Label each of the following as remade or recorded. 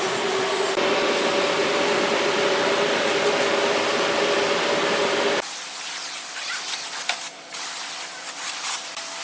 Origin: recorded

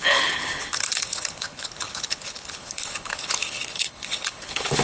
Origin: remade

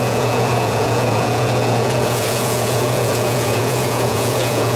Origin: remade